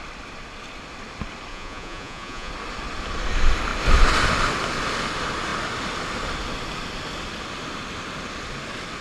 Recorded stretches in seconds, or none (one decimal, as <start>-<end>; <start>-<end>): 0.0-1.5; 2.5-9.0